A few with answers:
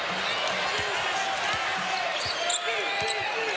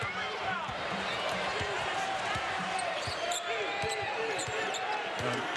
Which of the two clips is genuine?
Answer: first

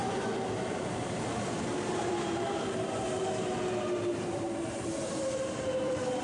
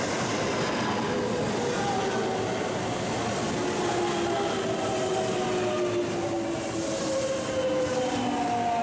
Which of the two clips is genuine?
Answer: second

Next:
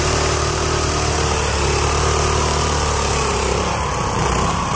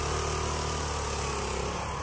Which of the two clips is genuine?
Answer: second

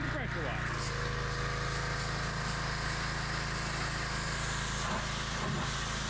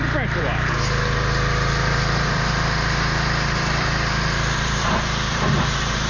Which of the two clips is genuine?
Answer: first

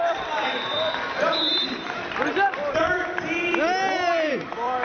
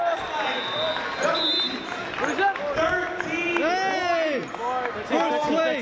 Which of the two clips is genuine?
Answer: second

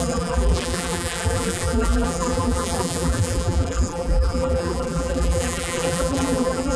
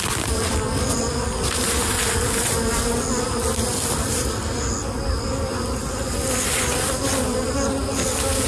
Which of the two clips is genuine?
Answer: second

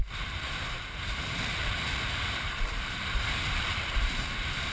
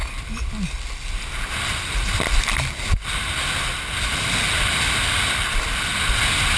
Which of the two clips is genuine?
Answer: second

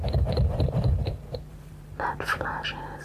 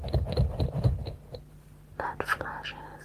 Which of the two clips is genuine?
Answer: second